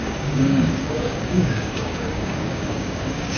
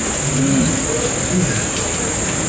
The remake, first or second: first